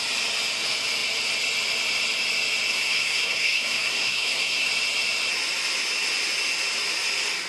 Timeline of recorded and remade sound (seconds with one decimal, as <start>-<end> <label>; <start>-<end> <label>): 0.0-2.7 recorded; 2.7-4.7 remade; 4.7-7.5 recorded